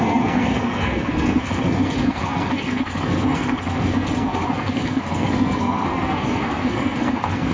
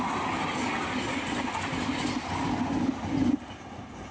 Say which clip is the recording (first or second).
second